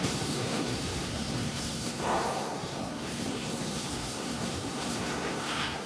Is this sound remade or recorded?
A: remade